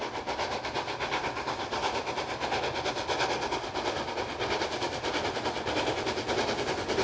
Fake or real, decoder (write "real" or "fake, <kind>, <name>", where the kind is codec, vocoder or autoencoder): real